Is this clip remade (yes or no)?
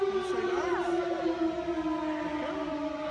no